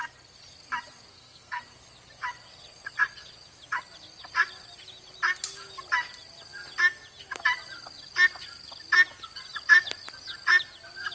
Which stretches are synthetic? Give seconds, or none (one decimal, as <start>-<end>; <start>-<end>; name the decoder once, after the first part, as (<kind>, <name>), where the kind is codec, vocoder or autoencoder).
1.1-1.6 (codec, SNAC)